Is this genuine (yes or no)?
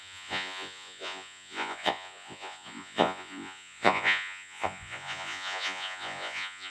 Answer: no